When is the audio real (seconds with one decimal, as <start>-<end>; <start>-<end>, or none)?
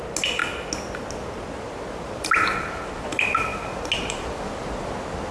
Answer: 0.0-5.3